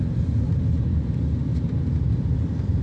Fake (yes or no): no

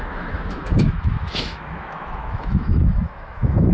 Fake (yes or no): yes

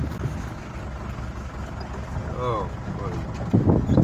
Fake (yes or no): no